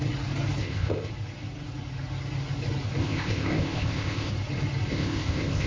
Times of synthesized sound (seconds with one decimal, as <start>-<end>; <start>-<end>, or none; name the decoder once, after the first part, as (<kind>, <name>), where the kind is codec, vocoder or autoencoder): 0.6-1.1 (codec, ZipCodec); 3.0-4.3; 4.9-5.7